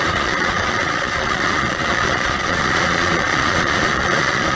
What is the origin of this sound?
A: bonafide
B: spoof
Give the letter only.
B